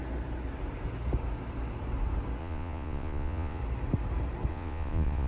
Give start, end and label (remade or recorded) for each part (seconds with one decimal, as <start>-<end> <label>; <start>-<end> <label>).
0.0-2.4 recorded; 2.4-3.6 remade; 3.6-4.5 recorded; 4.5-5.3 remade